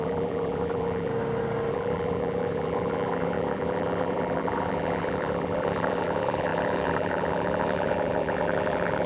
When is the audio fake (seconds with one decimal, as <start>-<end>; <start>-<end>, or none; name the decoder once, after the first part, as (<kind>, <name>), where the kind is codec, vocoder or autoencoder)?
0.0-1.1 (vocoder, BigVGAN v2); 1.7-9.1